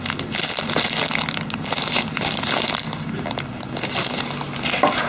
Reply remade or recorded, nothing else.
recorded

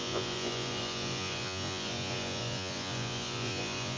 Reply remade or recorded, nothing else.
remade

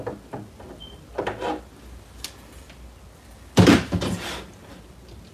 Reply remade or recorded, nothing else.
recorded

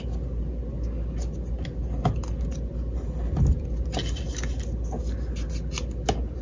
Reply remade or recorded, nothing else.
recorded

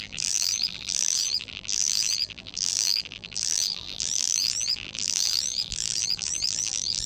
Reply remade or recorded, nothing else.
remade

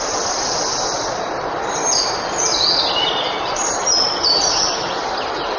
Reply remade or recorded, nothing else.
recorded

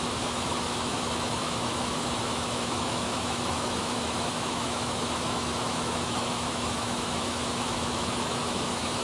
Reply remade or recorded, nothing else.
remade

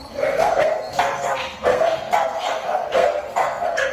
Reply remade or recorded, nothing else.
remade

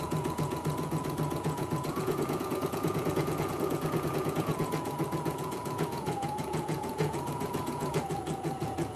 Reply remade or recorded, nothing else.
remade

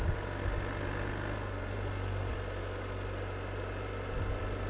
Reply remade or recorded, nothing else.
recorded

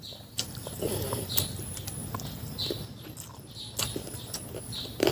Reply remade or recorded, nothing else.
recorded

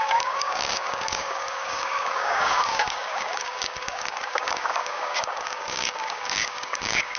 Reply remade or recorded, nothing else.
remade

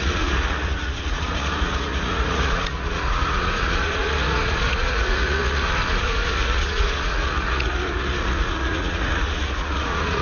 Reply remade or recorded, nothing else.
remade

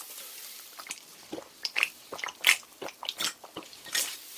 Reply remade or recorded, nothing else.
remade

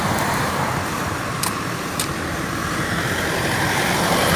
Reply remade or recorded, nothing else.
remade